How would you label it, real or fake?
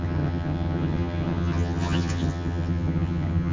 fake